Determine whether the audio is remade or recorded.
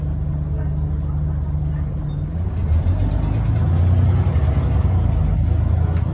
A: recorded